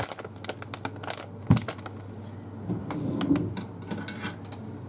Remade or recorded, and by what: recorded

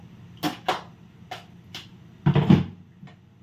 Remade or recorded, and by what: recorded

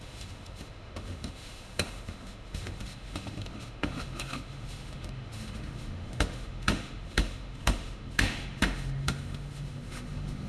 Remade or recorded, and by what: remade, autoencoder, DAC-VAE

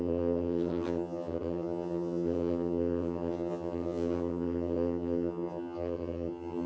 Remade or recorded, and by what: remade, vocoder, HiFi-GAN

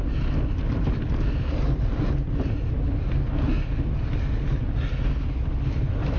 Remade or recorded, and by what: recorded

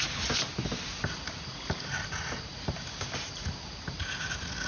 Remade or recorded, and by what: recorded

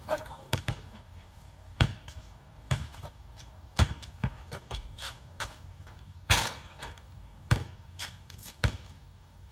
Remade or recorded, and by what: remade, codec, DAC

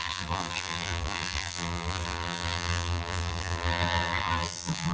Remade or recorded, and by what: remade, vocoder, BigVGAN v2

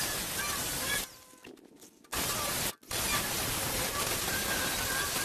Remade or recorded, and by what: recorded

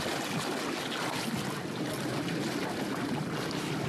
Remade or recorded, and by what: recorded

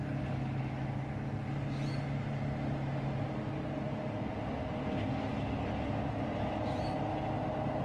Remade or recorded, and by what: recorded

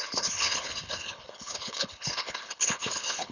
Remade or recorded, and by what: remade, codec, HILCodec